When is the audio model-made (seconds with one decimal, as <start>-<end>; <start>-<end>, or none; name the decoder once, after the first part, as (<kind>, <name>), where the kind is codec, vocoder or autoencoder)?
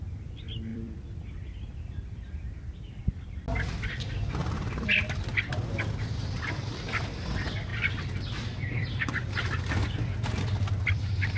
0.7-3.0 (vocoder, BigVGAN v2); 4.4-5.7